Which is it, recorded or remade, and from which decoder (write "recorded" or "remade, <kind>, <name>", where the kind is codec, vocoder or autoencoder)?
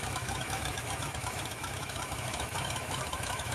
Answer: remade, autoencoder, DAC-VAE